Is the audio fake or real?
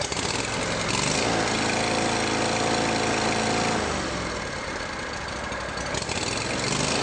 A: real